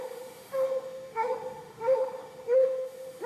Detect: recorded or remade remade